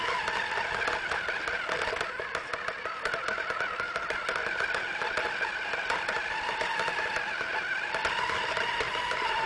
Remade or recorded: recorded